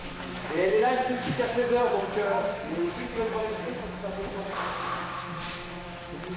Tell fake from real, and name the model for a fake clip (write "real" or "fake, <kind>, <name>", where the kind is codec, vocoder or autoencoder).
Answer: fake, autoencoder, DAC-VAE